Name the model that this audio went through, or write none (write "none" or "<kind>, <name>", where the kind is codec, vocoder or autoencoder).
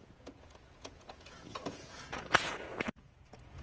vocoder, Vocos